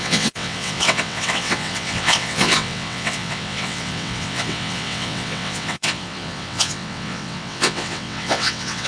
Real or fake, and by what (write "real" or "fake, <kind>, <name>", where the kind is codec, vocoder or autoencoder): fake, vocoder, WaveNeXt